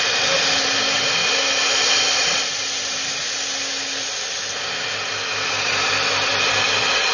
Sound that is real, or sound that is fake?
real